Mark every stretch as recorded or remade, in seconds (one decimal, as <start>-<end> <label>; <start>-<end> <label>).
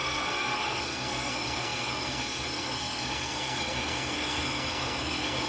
0.0-5.5 remade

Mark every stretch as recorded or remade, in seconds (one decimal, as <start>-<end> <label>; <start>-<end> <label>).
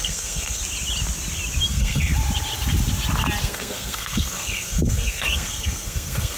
0.0-0.6 remade; 0.6-1.7 recorded; 1.7-2.1 remade; 2.1-3.4 recorded; 3.4-6.4 remade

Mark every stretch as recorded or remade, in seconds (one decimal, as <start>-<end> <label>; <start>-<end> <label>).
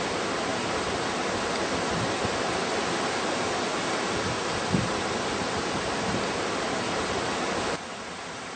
0.0-8.6 recorded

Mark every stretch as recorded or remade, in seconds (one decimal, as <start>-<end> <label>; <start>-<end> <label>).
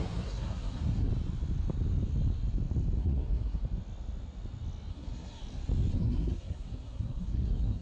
0.0-1.1 remade; 1.1-3.0 recorded; 3.0-3.6 remade; 3.6-4.9 recorded; 4.9-5.4 remade; 5.4-5.9 recorded; 5.9-7.8 remade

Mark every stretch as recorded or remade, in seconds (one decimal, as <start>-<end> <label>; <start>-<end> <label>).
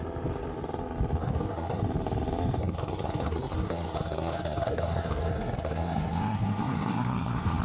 0.0-1.2 recorded; 1.2-1.8 remade; 1.8-2.6 recorded; 2.6-7.6 remade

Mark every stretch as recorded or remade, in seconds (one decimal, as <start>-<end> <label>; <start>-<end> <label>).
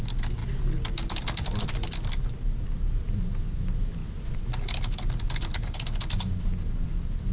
0.0-7.3 recorded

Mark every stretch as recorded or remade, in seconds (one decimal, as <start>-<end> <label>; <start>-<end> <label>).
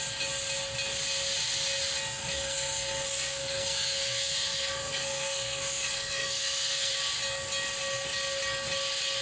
0.0-2.2 recorded; 2.2-6.9 remade; 6.9-9.2 recorded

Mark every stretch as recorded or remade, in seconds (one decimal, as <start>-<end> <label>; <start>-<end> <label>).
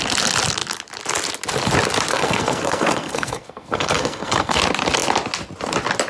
0.0-2.1 recorded; 2.1-4.6 remade; 4.6-6.1 recorded